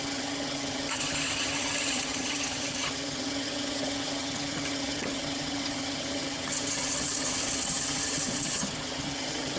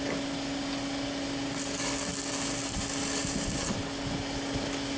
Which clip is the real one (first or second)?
second